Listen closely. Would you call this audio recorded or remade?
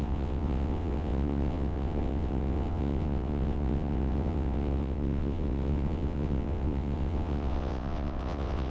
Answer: remade